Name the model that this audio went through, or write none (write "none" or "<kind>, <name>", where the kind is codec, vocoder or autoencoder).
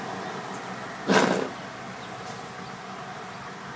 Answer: none